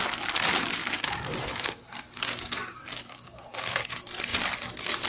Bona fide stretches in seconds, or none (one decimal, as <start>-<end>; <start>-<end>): 0.0-0.8; 3.9-5.1